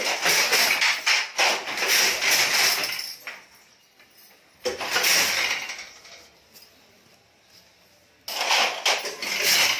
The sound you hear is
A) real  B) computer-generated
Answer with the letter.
A